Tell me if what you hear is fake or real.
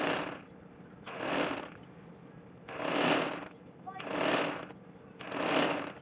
real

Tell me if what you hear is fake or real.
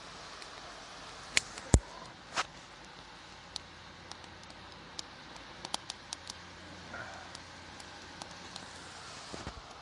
real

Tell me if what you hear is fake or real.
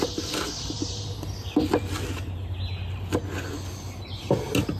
real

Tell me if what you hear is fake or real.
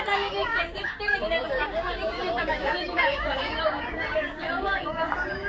fake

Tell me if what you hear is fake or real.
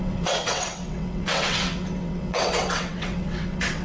fake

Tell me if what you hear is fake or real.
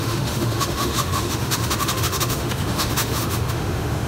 fake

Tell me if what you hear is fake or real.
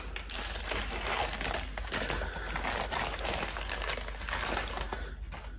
real